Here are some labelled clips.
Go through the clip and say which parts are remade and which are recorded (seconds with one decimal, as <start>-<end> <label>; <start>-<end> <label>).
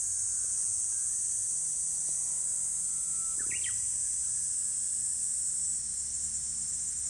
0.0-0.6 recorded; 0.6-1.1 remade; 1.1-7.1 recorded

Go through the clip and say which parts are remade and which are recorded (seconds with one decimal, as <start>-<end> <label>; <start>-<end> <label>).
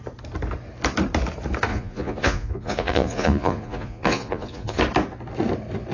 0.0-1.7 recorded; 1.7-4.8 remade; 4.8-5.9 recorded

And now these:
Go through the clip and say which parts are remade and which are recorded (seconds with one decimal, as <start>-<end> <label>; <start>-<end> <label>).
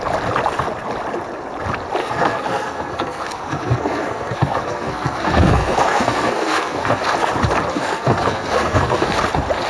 0.0-2.0 recorded; 2.0-7.0 remade; 7.0-7.7 recorded; 7.7-9.2 remade; 9.2-9.7 recorded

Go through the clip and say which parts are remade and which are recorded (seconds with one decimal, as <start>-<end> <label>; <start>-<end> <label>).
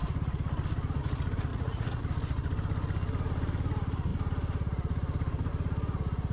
0.0-1.5 recorded; 1.5-2.0 remade; 2.0-6.3 recorded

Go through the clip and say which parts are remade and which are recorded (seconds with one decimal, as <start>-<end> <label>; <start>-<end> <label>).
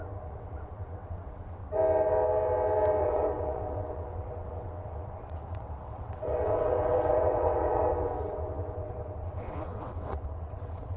0.0-1.6 remade; 1.6-3.0 recorded; 3.0-11.0 remade